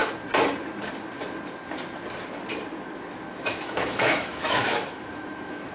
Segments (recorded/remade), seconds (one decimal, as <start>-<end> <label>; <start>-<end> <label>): 0.0-3.4 recorded; 3.4-5.7 remade